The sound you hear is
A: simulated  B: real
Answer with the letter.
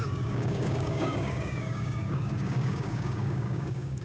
A